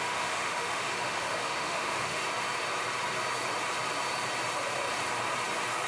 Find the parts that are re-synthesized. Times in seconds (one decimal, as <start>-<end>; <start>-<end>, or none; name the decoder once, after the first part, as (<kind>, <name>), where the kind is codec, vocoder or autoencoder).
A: 0.0-2.2 (autoencoder, DAC-VAE)